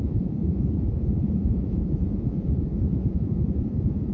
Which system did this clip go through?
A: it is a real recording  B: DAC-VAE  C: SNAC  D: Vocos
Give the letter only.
D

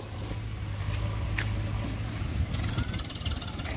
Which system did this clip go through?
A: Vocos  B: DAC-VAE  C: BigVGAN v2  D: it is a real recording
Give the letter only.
D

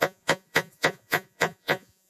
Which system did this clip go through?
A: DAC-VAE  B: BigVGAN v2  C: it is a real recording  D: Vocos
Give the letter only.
D